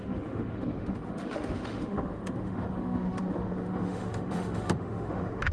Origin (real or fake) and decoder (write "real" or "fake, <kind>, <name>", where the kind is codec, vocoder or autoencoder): fake, autoencoder, DAC-VAE